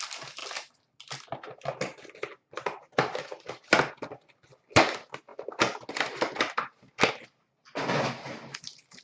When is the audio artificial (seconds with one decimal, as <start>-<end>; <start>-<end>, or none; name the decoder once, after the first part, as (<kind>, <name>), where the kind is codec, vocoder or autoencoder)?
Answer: none